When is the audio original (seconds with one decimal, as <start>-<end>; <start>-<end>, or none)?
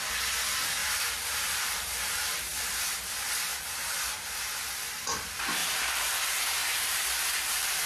0.0-0.8; 2.8-3.5; 4.7-5.6; 6.1-6.6